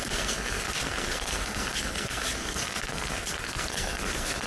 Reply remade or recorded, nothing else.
remade